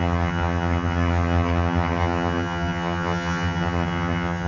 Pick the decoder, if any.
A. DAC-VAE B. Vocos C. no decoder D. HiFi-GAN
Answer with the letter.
D